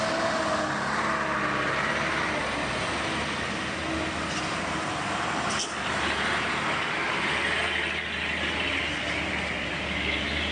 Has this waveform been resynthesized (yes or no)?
no